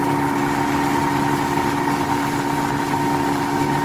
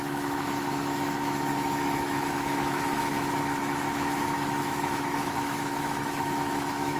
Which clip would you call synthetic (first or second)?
second